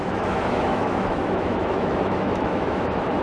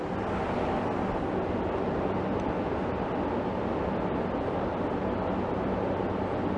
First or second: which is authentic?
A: second